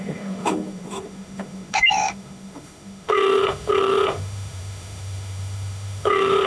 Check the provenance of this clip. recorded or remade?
remade